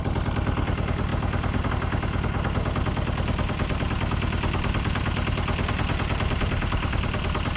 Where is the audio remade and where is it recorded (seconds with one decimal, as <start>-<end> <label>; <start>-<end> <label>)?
0.0-7.6 recorded